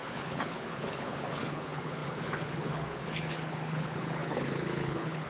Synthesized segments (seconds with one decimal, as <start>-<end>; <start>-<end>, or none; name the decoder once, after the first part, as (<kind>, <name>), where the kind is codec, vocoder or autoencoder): 0.0-5.3 (codec, HILCodec)